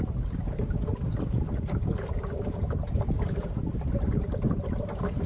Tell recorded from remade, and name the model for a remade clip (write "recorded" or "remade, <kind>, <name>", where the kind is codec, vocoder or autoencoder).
recorded